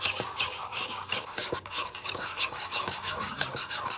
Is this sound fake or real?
fake